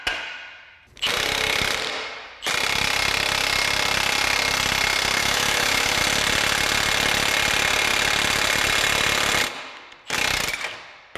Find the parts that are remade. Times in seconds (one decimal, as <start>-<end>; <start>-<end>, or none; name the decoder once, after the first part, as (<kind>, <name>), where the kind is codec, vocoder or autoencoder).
5.2-6.0 (autoencoder, DAC-VAE)